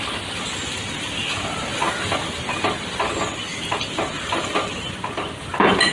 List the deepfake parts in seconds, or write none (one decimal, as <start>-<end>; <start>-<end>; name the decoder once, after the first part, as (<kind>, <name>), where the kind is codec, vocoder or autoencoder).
none